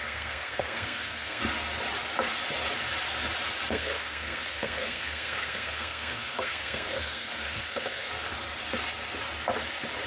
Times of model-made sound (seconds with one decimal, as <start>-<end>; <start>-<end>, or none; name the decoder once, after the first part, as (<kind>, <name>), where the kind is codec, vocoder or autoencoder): 0.0-1.4 (codec, SNAC); 3.7-8.1